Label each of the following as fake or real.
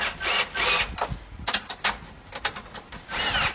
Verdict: real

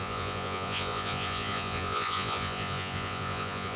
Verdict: fake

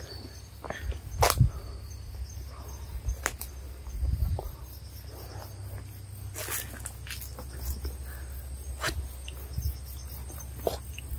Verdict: real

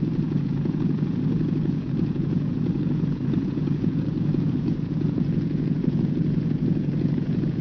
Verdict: fake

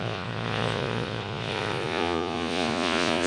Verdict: fake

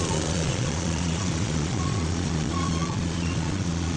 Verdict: fake